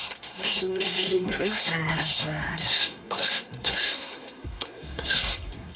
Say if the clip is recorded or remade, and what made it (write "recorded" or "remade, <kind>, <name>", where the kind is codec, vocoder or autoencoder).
remade, codec, SNAC